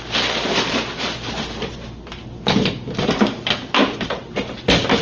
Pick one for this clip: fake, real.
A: real